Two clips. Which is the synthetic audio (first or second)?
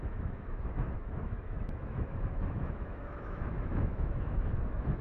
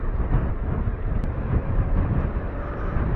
first